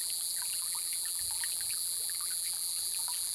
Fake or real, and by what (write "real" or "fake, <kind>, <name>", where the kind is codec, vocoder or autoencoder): fake, vocoder, BigVGAN v2